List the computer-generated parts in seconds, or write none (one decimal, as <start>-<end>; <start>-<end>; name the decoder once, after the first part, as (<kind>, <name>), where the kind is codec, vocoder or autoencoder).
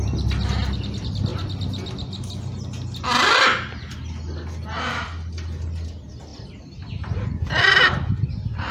none